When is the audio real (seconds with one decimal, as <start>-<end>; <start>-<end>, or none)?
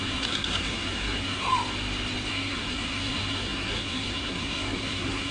1.5-2.3